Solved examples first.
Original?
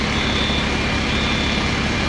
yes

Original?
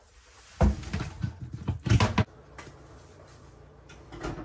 yes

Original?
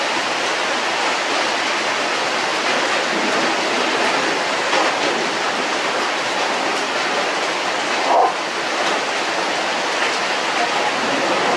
yes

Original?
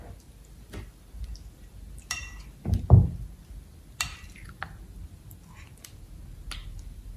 yes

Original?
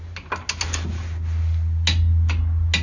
yes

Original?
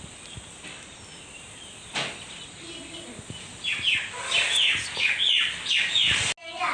yes